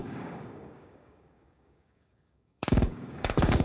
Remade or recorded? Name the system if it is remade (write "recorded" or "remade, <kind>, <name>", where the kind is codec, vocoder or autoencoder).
remade, codec, DAC